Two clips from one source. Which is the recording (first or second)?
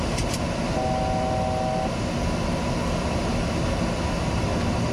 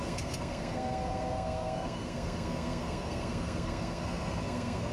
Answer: first